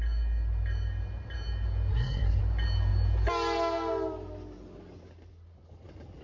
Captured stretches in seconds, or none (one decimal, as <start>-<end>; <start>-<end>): 0.0-1.9; 2.4-6.2

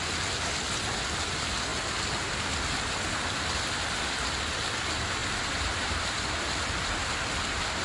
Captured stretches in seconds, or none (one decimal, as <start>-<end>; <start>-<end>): 0.0-7.8

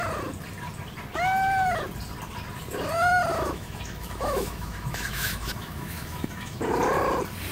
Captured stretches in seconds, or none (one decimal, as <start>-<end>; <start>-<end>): 0.0-3.3; 6.6-7.5

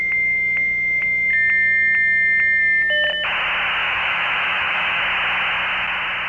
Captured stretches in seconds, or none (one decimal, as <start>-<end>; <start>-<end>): 0.0-3.8; 5.0-6.3

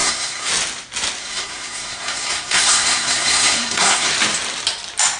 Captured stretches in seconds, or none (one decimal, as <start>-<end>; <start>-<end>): 0.5-1.2; 4.1-5.2

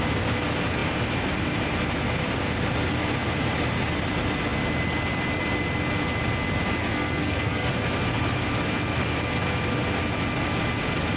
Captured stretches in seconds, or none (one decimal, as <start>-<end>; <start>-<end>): 0.0-6.8; 7.7-11.2

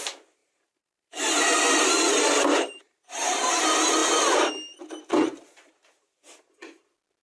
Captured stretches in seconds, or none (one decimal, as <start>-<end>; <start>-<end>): 0.0-0.4; 3.5-7.2

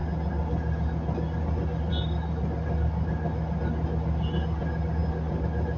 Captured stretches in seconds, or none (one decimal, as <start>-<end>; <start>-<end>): 0.0-5.8